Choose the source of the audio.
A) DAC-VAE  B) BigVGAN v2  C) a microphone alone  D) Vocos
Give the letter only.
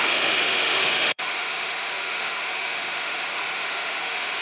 A